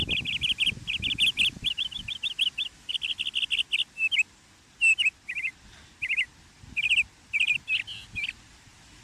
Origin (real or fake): real